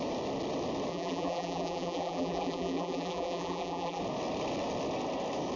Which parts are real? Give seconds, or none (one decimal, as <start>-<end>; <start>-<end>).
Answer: 0.0-0.9; 4.0-5.6